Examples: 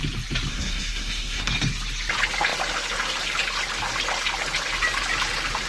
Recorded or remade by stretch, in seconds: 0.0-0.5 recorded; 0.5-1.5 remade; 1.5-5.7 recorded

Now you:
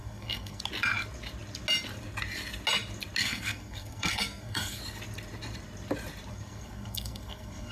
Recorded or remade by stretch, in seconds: 0.0-0.6 remade; 0.6-3.2 recorded; 3.2-4.8 remade; 4.8-6.3 recorded; 6.3-7.7 remade

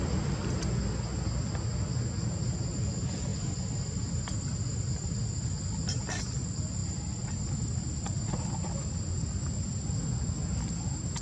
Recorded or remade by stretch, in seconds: 0.0-11.2 recorded

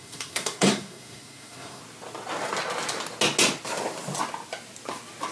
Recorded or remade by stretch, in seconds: 0.0-1.8 remade; 1.8-5.3 recorded

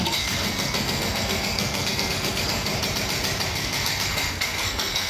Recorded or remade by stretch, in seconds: 0.0-2.7 remade; 2.7-3.5 recorded; 3.5-5.1 remade

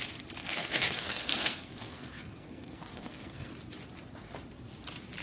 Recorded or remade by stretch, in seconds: 0.0-0.4 recorded; 0.4-3.5 remade; 3.5-5.2 recorded